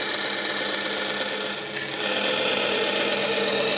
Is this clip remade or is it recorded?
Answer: recorded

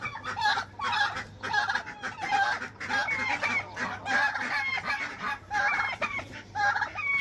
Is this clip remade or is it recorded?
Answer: recorded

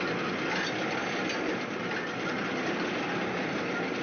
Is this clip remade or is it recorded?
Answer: recorded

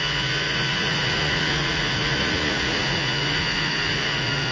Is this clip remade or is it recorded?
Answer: remade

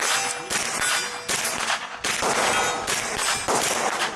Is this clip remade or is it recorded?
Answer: recorded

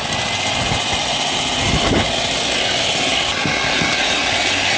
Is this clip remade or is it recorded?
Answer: recorded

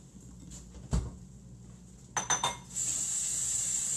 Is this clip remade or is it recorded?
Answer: recorded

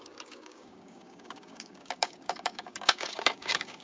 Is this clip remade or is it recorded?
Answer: remade